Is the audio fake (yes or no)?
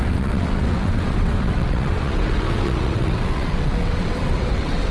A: yes